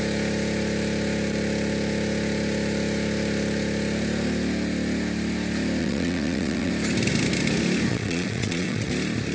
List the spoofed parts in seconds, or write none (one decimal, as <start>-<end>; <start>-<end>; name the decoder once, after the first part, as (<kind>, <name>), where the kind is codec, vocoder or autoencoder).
5.8-6.7 (vocoder, WaveNeXt); 7.9-8.9